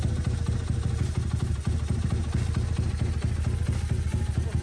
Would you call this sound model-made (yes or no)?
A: no